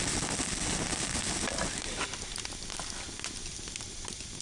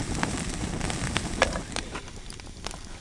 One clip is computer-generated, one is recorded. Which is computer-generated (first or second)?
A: second